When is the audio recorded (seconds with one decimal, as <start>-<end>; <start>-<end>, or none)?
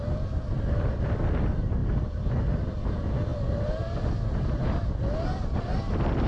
0.0-1.8; 2.7-6.3